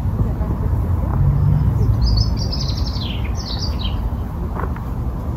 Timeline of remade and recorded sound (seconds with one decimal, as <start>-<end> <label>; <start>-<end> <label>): 0.0-5.4 recorded